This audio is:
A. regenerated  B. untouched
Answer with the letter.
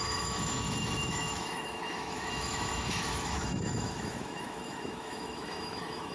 A